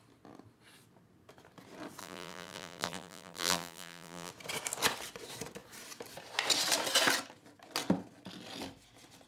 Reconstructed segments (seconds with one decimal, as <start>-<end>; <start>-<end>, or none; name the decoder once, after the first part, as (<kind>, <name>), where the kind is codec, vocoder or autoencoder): 2.0-4.3 (vocoder, BigVGAN v2)